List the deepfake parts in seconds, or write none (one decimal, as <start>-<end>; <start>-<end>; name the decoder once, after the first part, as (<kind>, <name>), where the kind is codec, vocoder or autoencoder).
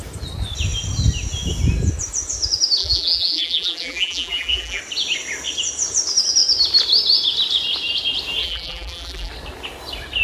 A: 2.8-4.8 (vocoder, BigVGAN v2); 8.4-9.3